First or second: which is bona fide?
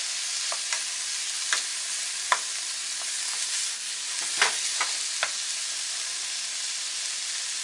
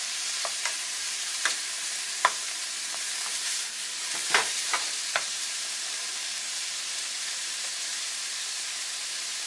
first